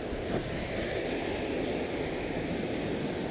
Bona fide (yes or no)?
yes